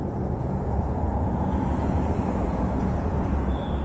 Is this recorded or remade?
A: remade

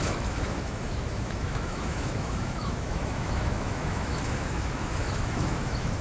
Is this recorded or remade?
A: remade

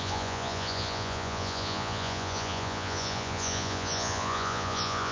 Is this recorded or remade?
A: remade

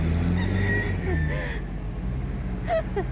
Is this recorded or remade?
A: recorded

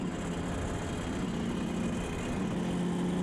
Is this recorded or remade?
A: recorded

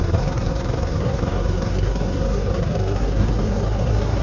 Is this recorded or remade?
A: remade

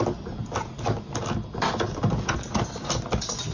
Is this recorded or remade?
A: recorded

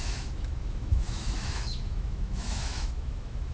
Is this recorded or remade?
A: remade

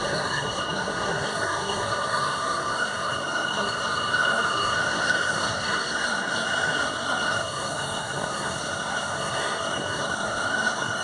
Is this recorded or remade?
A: remade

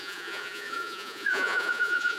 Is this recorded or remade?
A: remade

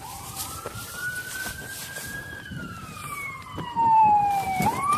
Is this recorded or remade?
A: remade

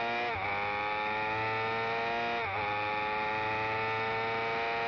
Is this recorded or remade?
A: recorded